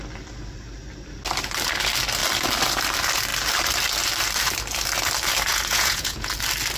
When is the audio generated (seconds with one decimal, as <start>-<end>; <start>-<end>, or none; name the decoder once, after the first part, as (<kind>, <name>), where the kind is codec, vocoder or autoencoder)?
5.5-6.3 (vocoder, Vocos)